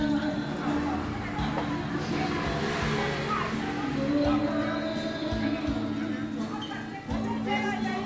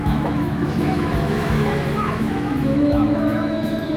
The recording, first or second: first